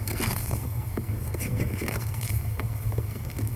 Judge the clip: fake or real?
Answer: fake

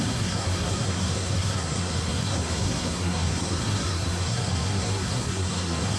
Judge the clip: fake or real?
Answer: fake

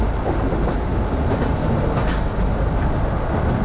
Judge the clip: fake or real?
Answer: real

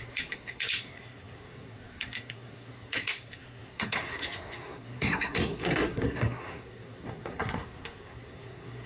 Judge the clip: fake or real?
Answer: fake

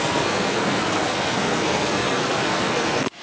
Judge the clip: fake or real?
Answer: fake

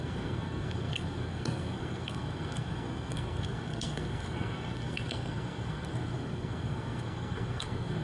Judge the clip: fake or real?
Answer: fake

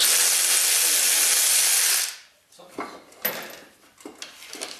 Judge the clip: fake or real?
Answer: real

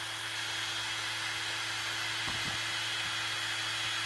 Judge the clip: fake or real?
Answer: real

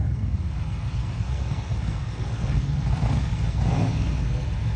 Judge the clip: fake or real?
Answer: fake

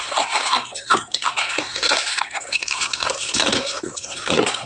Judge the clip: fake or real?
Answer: fake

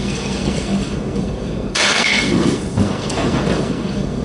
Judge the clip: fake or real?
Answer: fake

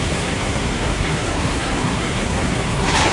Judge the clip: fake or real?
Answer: fake